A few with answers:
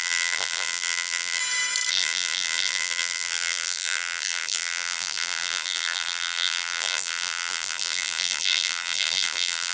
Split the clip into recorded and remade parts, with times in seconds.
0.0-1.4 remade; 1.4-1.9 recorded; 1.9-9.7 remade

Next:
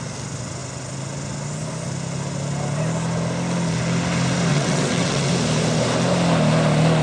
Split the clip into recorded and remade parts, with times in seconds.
0.0-4.5 recorded; 4.5-5.3 remade; 5.3-7.0 recorded

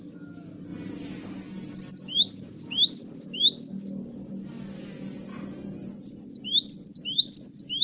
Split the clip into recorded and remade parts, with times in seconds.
0.0-7.8 recorded